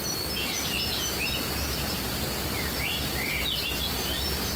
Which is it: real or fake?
real